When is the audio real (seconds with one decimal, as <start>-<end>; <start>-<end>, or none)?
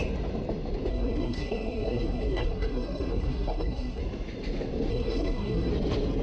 0.0-0.9; 4.0-4.9; 5.7-6.2